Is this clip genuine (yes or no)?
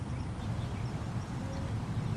yes